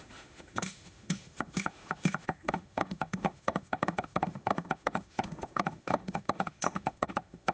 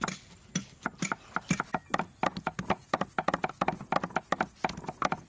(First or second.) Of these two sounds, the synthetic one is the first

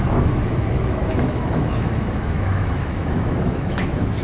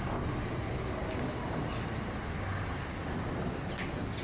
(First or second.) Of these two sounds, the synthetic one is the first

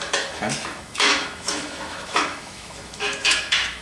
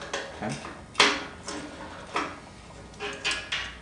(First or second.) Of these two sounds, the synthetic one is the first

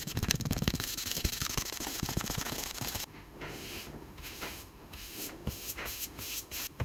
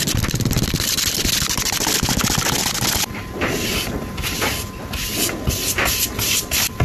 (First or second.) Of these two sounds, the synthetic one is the first